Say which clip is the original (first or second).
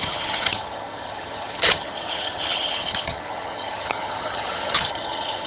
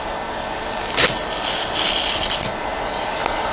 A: second